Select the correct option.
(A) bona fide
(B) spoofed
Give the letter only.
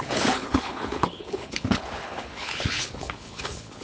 B